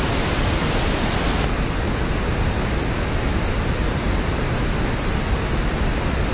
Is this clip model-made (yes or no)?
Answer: no